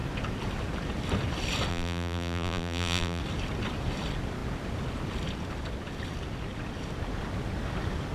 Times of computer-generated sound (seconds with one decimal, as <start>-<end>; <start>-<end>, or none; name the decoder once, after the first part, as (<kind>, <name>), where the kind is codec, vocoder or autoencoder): 1.7-3.2 (vocoder, BigVGAN v2)